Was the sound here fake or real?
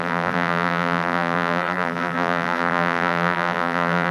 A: fake